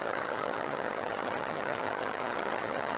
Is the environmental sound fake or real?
fake